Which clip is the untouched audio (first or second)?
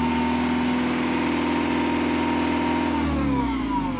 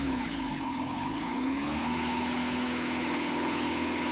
first